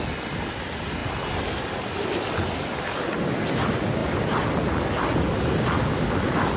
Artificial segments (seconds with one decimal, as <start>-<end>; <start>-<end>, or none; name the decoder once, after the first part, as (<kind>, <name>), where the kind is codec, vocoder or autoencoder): 4.0-4.8 (vocoder, BigVGAN v2)